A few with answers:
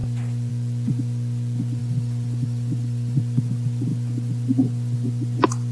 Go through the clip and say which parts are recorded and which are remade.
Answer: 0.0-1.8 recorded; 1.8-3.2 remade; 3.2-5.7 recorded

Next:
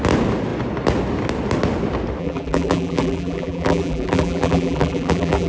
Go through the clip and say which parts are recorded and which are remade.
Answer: 0.0-2.2 recorded; 2.2-5.5 remade

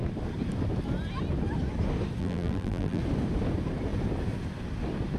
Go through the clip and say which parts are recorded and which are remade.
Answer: 0.0-2.2 recorded; 2.2-3.0 remade; 3.0-5.2 recorded

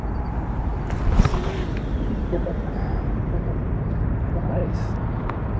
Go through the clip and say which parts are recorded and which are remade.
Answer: 0.0-0.7 remade; 0.7-4.1 recorded; 4.1-4.6 remade; 4.6-5.6 recorded

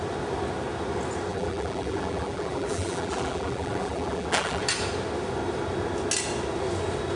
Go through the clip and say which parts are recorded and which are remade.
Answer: 0.0-1.3 recorded; 1.3-4.6 remade; 4.6-7.2 recorded

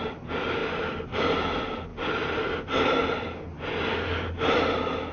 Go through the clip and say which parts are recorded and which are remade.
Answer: 0.0-1.9 recorded; 1.9-5.1 remade

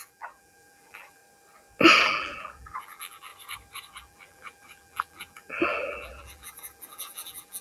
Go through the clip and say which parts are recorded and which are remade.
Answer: 0.0-1.2 remade; 1.2-2.0 recorded; 2.0-3.3 remade; 3.3-3.9 recorded; 3.9-7.6 remade

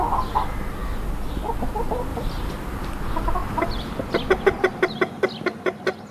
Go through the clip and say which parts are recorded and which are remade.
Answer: 0.0-2.1 recorded; 2.1-2.9 remade; 2.9-3.4 recorded; 3.4-4.1 remade; 4.1-6.1 recorded